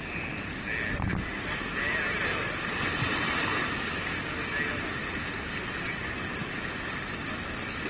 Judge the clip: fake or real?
real